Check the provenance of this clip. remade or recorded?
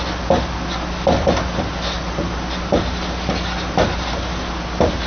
recorded